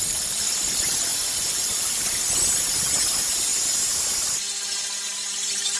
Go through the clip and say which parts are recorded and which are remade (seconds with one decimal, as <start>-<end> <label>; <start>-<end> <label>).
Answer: 0.0-1.1 recorded; 1.1-1.8 remade; 1.8-5.8 recorded